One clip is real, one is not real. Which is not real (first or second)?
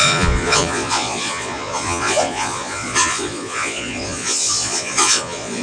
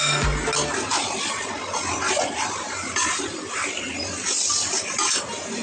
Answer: first